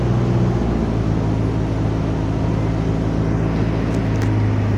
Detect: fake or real real